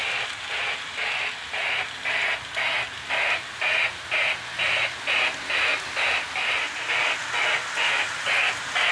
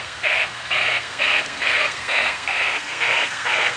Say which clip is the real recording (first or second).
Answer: first